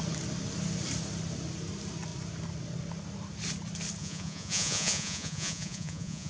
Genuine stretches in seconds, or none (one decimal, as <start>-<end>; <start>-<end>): 0.0-4.0